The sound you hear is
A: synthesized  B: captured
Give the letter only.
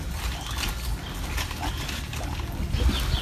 B